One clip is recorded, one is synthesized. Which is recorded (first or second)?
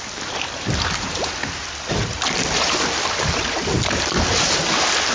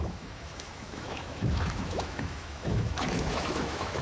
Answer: first